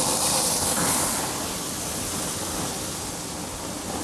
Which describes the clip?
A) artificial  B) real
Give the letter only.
B